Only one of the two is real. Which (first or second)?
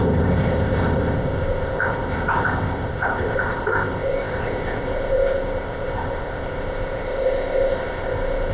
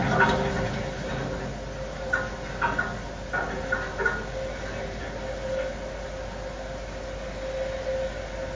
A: second